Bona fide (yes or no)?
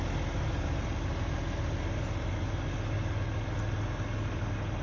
yes